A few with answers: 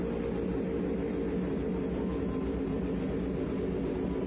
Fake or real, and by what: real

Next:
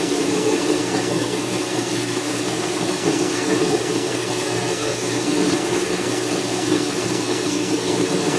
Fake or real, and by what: fake, codec, SNAC